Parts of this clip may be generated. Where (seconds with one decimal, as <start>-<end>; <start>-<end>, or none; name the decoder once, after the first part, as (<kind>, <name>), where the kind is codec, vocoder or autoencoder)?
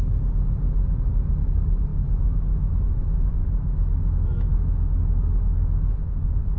1.9-2.8 (autoencoder, DAC-VAE); 3.4-6.1